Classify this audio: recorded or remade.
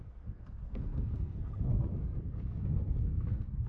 remade